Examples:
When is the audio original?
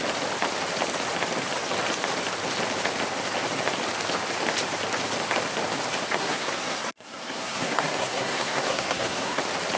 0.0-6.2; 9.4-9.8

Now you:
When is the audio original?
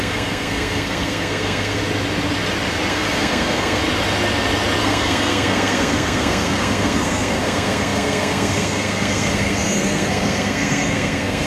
1.8-2.9; 3.8-4.8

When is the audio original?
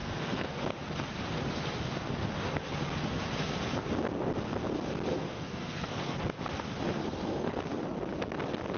0.6-5.1; 6.2-7.0; 7.6-8.8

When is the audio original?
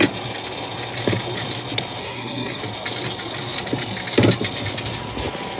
0.0-2.0; 2.6-5.6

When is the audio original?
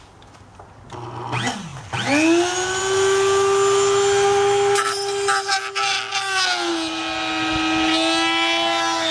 0.0-9.1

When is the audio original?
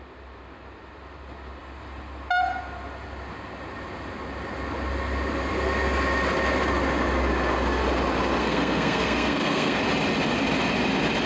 0.0-8.4; 9.8-11.3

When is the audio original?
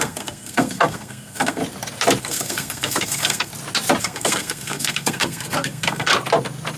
1.6-2.2; 3.5-4.0; 6.1-6.8